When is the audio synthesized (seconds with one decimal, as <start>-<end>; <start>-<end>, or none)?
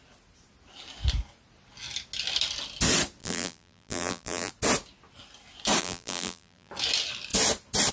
3.2-4.5; 5.8-6.7